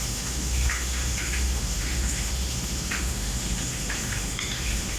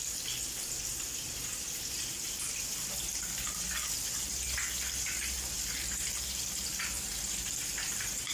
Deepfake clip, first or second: first